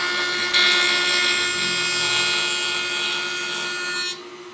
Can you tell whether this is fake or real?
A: real